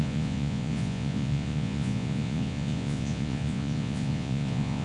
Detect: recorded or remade remade